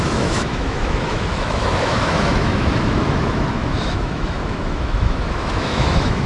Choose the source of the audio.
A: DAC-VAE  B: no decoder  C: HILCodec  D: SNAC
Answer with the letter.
A